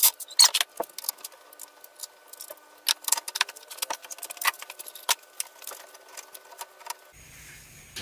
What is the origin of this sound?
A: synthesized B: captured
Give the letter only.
B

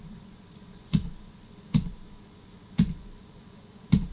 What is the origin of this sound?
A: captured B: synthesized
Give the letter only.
B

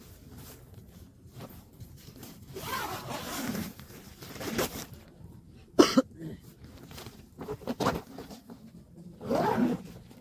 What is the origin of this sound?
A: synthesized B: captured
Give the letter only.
A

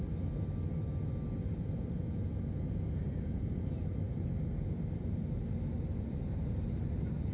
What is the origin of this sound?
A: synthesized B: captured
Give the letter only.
B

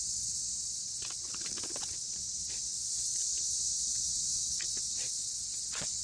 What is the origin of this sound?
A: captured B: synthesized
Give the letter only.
B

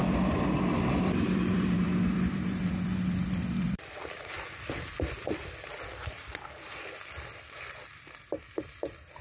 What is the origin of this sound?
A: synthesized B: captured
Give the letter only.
A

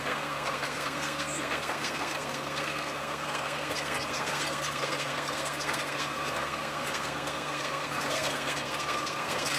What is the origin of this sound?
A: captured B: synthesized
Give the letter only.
B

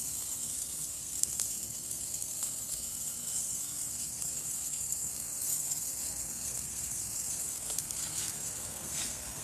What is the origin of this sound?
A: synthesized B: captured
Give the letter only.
A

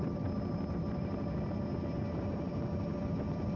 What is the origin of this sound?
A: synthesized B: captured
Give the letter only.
B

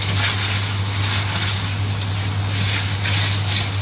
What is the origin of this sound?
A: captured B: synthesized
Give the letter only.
A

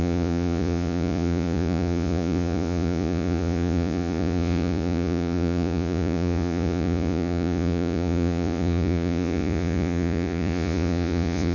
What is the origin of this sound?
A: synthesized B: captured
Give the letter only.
A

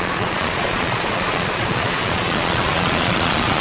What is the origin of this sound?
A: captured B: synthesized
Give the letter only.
B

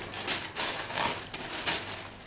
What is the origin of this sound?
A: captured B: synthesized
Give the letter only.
A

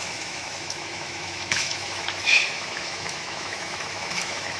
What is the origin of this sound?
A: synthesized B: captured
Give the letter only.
A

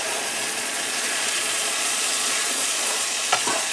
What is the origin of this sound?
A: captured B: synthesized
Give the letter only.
B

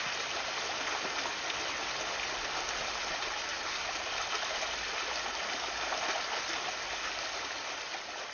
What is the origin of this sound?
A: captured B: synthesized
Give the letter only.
A